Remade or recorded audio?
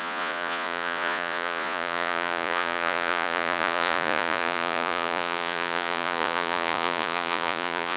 remade